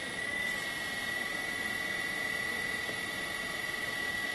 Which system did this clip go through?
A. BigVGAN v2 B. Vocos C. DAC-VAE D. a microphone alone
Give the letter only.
D